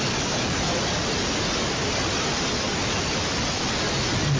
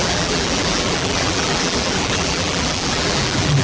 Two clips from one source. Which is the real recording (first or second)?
first